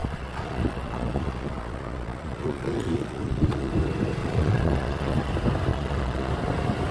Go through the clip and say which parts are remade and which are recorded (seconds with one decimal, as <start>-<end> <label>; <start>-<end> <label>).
0.0-3.7 remade; 3.7-4.2 recorded; 4.2-5.3 remade; 5.3-5.7 recorded; 5.7-6.3 remade; 6.3-6.9 recorded